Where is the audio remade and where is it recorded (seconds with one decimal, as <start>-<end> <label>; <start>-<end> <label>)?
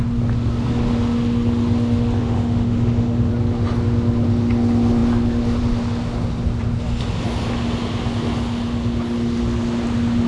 0.0-2.2 recorded; 2.2-3.3 remade; 3.3-10.3 recorded